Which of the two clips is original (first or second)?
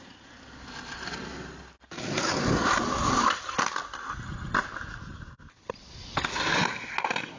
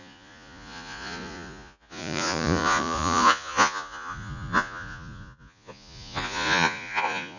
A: first